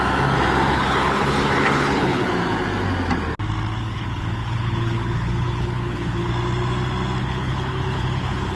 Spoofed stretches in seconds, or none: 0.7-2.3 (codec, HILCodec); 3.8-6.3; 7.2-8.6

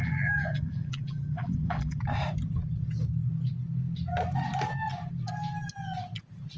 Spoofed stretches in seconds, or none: 0.0-2.0 (vocoder, BigVGAN v2)

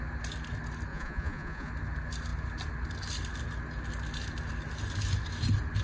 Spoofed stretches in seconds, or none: 0.9-1.7 (vocoder, Vocos)

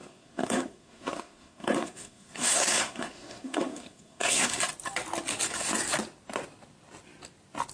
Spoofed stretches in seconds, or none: 0.0-4.6 (codec, SNAC)

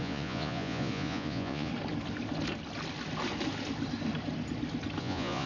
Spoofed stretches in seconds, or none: 0.0-1.7 (vocoder, Vocos); 5.0-5.5